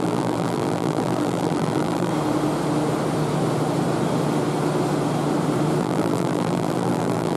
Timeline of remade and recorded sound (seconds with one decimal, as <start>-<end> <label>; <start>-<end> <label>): 0.0-2.1 remade; 2.1-5.8 recorded; 5.8-7.4 remade